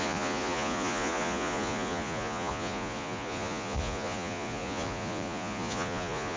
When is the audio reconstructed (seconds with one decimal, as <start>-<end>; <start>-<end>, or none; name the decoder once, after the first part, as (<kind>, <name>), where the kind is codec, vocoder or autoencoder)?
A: 0.0-6.4 (vocoder, Vocos)